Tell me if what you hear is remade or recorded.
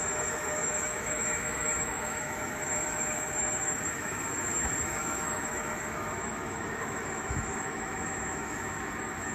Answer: remade